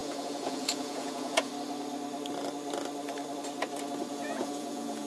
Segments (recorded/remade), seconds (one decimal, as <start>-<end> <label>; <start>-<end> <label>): 0.0-1.5 remade; 1.5-4.1 recorded; 4.1-5.1 remade